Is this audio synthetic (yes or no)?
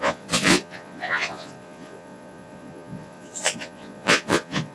yes